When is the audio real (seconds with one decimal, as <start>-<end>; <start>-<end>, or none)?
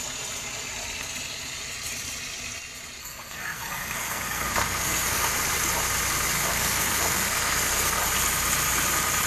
0.0-3.0; 5.3-6.5; 8.0-9.3